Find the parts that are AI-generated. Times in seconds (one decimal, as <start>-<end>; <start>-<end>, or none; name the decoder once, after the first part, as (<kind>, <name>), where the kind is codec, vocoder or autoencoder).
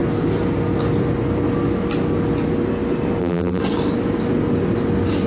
3.2-3.6 (vocoder, BigVGAN v2)